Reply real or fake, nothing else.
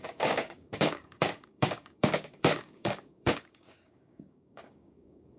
fake